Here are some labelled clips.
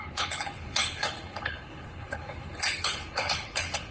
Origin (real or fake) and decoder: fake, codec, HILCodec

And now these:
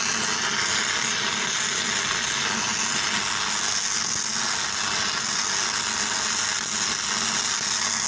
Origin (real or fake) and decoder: real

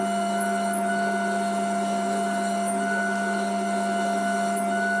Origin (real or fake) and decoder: real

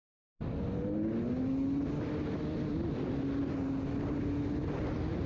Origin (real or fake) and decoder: real